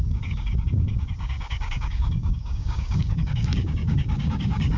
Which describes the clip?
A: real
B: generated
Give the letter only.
B